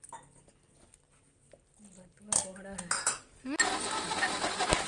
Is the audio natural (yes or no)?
yes